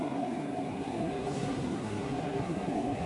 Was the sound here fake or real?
fake